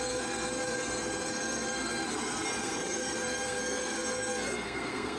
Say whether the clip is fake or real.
fake